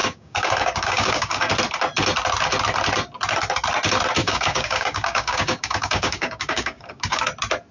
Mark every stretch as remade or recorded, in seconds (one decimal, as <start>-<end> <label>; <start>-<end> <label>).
0.0-1.5 remade; 1.5-4.2 recorded; 4.2-7.2 remade; 7.2-7.7 recorded

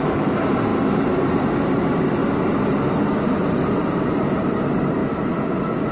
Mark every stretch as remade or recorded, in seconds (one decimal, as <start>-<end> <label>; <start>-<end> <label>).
0.0-2.2 remade; 2.2-3.8 recorded; 3.8-5.0 remade; 5.0-5.9 recorded

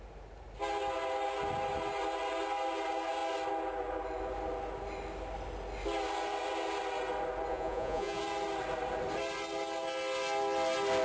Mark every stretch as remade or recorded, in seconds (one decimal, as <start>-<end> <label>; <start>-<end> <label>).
0.0-7.5 recorded; 7.5-8.2 remade; 8.2-11.0 recorded

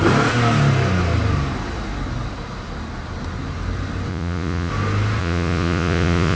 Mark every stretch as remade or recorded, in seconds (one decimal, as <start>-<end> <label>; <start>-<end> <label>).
0.0-4.1 recorded; 4.1-4.7 remade; 4.7-5.2 recorded; 5.2-6.4 remade